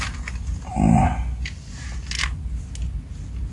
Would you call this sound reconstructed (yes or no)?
no